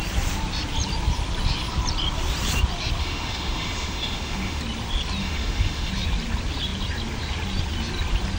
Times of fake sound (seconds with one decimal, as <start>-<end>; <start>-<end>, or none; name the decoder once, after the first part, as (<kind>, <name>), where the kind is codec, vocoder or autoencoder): 3.0-4.6 (autoencoder, DAC-VAE); 5.2-5.9